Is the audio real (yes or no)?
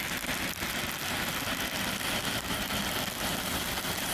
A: yes